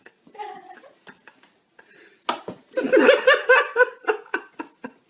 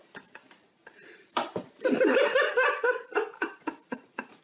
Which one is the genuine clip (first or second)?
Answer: first